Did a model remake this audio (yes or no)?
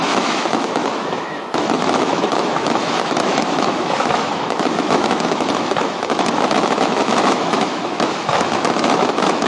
yes